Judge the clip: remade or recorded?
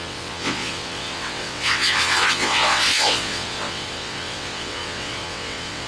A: remade